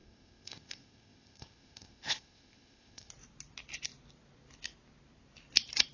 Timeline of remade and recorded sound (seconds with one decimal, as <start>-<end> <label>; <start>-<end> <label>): 0.0-3.1 remade; 3.1-5.9 recorded